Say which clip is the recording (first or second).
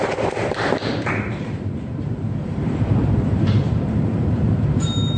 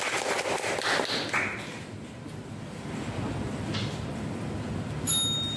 second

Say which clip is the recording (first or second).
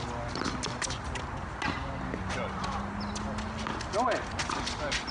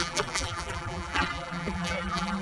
first